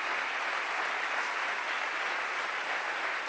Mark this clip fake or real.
real